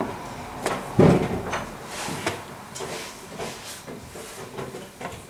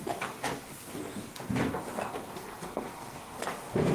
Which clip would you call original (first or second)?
first